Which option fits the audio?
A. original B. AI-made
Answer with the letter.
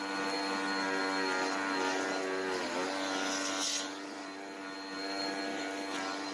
A